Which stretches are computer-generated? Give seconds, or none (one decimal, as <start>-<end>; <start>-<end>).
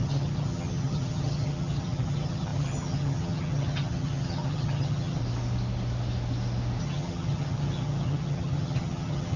0.0-5.2; 6.8-9.4